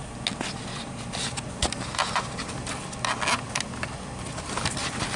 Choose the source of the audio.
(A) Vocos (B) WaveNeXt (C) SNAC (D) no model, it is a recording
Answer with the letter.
D